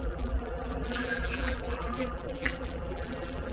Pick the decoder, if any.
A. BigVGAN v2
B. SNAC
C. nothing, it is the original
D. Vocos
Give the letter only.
A